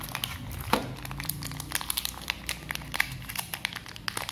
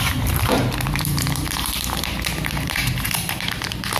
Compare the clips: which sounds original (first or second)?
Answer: first